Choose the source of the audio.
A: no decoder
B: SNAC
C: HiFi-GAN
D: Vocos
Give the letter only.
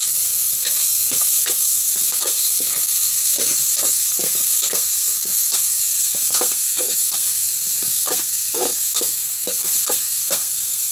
B